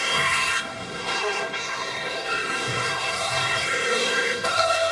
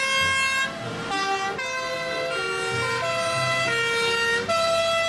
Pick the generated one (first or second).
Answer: first